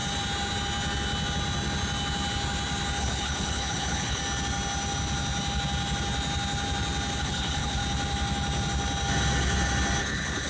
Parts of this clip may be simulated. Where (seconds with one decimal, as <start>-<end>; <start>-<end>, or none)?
3.0-4.2; 7.2-7.8; 10.0-10.5